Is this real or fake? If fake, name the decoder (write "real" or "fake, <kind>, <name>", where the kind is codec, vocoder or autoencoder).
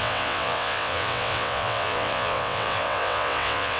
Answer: fake, vocoder, WaveNeXt